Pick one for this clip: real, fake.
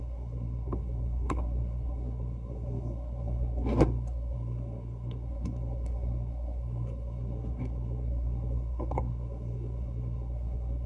fake